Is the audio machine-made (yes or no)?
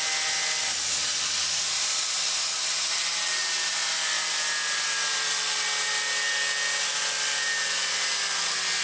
no